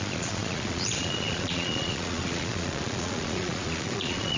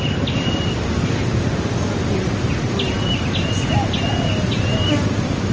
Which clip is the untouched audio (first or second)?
second